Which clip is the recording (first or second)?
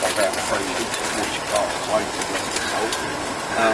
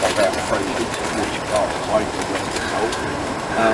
first